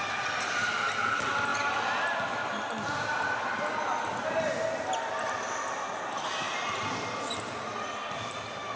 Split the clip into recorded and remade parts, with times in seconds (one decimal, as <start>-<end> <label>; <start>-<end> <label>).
0.0-8.8 recorded